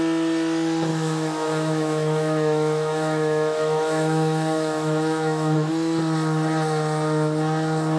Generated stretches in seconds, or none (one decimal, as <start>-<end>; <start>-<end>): 0.9-5.7